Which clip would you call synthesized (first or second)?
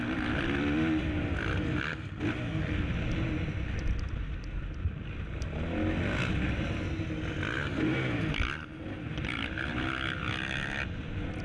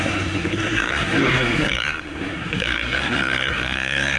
second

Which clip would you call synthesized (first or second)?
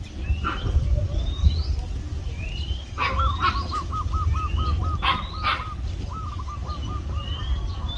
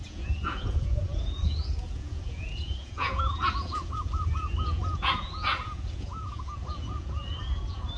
second